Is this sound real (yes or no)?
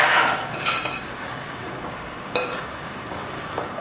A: no